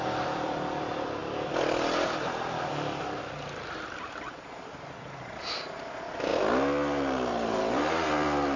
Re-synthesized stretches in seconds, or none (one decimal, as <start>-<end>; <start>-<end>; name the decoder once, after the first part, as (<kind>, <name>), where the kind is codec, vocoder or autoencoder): 0.0-1.2 (vocoder, BigVGAN v2); 3.2-6.3; 7.5-8.6